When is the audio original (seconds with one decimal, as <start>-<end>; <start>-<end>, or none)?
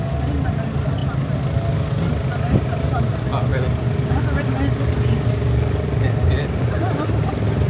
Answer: 0.0-7.7